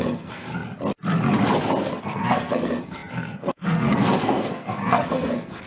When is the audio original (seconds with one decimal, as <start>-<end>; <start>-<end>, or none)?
0.5-2.0